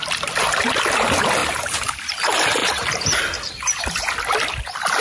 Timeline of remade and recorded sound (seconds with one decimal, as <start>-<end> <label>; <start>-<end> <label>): 0.0-1.4 recorded; 1.4-2.0 remade; 2.0-2.6 recorded; 2.6-3.2 remade; 3.2-5.0 recorded